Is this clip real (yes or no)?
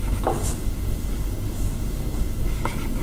no